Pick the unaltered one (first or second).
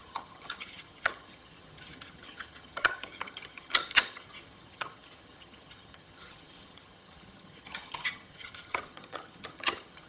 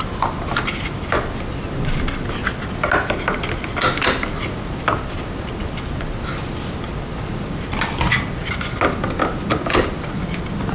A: second